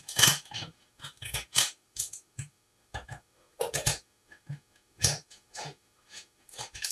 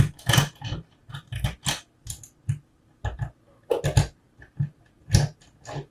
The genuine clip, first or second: second